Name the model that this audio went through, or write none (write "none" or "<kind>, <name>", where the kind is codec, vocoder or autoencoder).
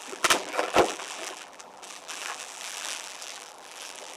vocoder, BigVGAN v2